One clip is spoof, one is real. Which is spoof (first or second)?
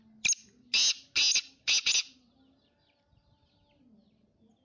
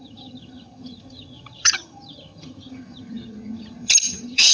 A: second